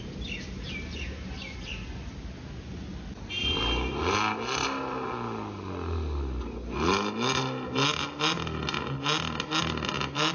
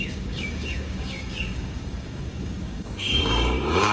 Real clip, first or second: first